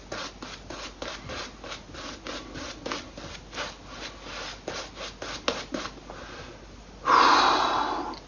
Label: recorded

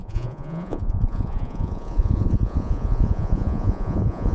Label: remade